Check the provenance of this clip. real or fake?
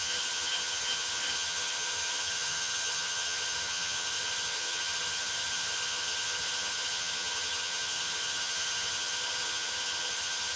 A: fake